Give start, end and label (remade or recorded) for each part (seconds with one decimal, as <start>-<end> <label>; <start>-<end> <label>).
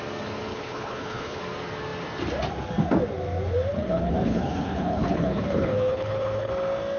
0.0-0.5 recorded; 0.5-1.4 remade; 1.4-3.7 recorded; 3.7-6.5 remade; 6.5-7.0 recorded